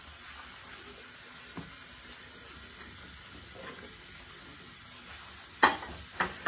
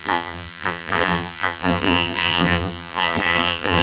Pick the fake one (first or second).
second